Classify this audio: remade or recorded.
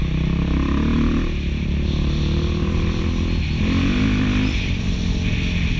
recorded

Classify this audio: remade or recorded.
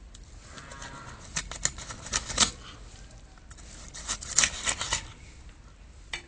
recorded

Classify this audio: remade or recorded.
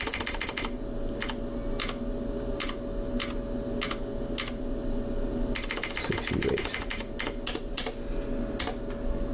recorded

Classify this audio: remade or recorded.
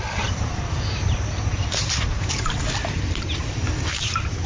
recorded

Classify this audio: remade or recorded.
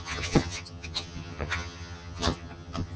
remade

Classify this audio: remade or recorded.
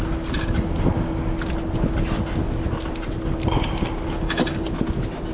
recorded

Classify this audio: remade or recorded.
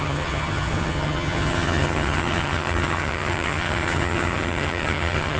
remade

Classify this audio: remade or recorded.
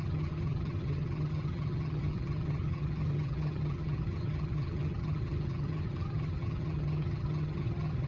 remade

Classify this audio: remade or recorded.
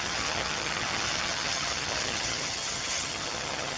remade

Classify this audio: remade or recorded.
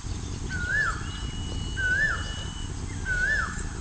recorded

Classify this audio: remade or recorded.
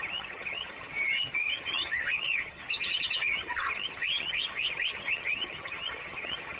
remade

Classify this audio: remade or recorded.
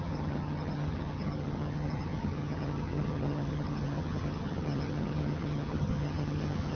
remade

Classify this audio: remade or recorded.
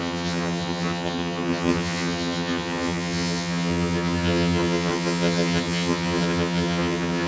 remade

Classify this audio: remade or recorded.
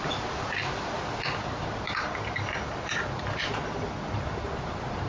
recorded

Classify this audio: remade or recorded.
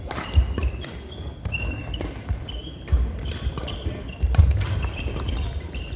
recorded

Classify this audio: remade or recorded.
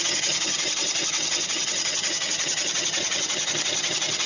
remade